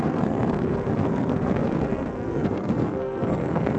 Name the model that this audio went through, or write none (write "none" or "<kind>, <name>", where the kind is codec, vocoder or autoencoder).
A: codec, SNAC